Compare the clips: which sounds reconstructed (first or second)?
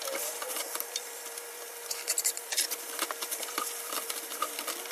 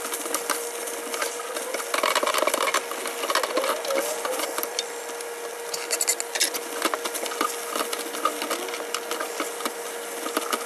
first